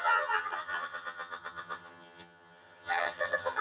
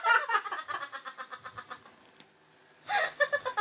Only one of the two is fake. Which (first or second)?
first